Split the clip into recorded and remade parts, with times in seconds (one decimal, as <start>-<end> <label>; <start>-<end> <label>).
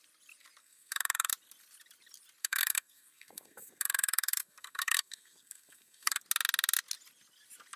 0.0-0.6 recorded; 0.6-1.3 remade; 1.3-2.4 recorded; 2.4-6.2 remade; 6.2-7.8 recorded